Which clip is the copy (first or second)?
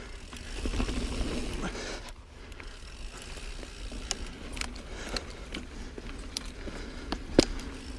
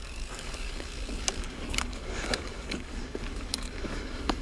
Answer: second